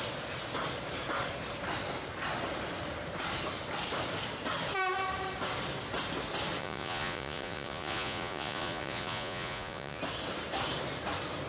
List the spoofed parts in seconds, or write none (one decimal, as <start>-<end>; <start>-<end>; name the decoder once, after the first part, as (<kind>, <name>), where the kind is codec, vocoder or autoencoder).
6.6-10.0 (vocoder, Vocos)